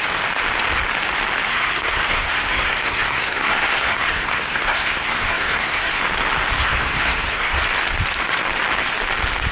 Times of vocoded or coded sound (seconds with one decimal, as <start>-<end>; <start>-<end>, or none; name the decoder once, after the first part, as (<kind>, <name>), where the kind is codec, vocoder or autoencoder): 1.5-5.9 (codec, SNAC); 6.6-7.6